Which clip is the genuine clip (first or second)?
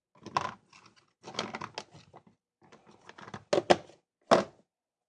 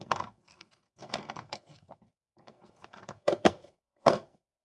first